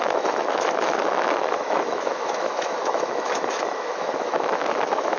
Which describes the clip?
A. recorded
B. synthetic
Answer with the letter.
B